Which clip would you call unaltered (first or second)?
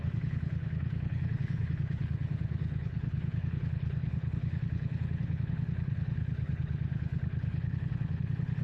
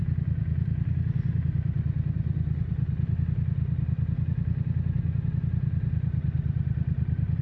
second